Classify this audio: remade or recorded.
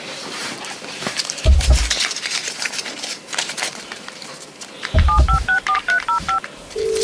remade